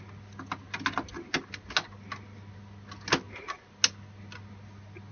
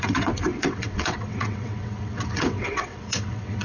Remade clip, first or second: second